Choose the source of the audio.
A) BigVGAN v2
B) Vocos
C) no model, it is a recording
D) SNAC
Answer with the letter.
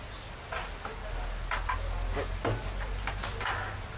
C